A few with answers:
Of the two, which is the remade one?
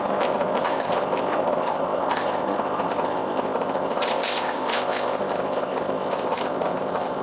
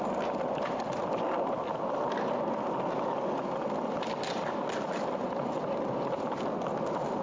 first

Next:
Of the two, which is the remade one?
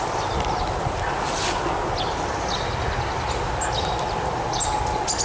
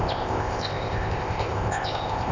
second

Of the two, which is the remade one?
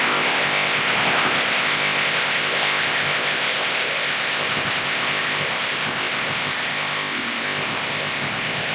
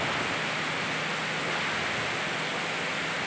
first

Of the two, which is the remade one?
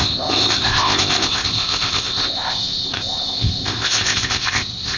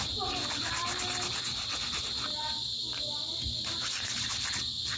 first